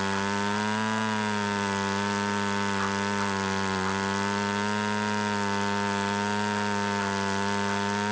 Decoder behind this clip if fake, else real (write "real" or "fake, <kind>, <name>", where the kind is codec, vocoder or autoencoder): real